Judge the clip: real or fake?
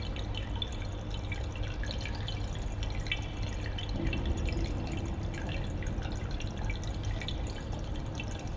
real